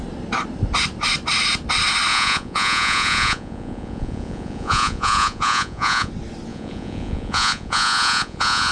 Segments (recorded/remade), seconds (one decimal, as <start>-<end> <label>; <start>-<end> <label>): 0.0-2.1 recorded; 2.1-6.1 remade; 6.1-6.5 recorded; 6.5-8.7 remade